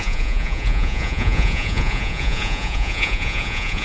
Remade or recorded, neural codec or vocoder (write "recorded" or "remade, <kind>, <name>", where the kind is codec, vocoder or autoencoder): remade, vocoder, Vocos